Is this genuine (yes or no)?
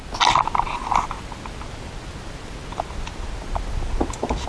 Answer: yes